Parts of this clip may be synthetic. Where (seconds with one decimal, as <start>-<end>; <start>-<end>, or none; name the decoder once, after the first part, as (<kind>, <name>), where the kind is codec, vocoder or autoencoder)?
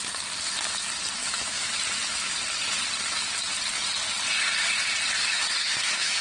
1.2-1.8 (autoencoder, DAC-VAE); 5.2-6.2